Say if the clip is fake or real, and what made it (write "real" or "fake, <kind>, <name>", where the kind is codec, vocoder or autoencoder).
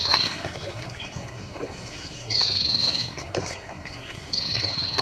fake, codec, SNAC